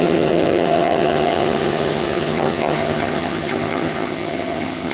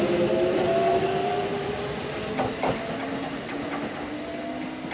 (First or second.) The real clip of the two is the second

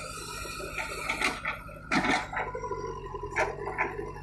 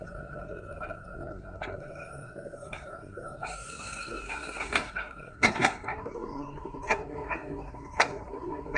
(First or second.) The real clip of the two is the first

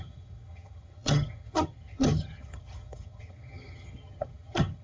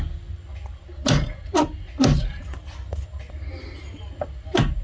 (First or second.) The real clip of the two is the second